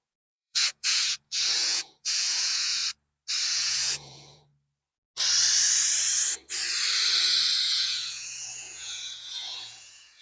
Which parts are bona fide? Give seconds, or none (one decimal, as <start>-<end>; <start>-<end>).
2.8-3.5; 4.5-7.6